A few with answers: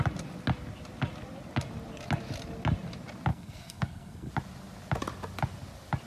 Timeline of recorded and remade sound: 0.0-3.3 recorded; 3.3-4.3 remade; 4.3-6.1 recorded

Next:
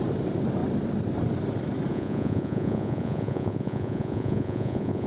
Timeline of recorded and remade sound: 0.0-1.9 recorded; 1.9-5.1 remade

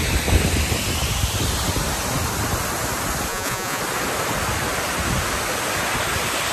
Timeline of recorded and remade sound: 0.0-3.3 recorded; 3.3-3.8 remade; 3.8-6.5 recorded

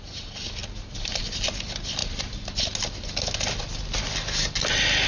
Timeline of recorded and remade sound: 0.0-0.6 recorded; 0.6-1.2 remade; 1.2-2.0 recorded; 2.0-2.6 remade; 2.6-5.1 recorded

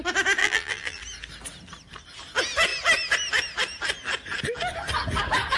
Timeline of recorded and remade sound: 0.0-0.4 recorded; 0.4-1.0 remade; 1.0-5.6 recorded

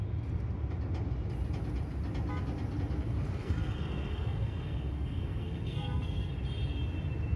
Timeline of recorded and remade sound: 0.0-3.4 recorded; 3.4-6.3 remade; 6.3-7.4 recorded

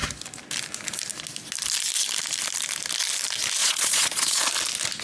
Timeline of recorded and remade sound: 0.0-3.6 recorded; 3.6-4.4 remade; 4.4-5.0 recorded

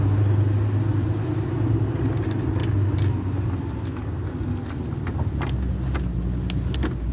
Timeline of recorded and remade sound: 0.0-0.9 recorded; 0.9-2.2 remade; 2.2-7.1 recorded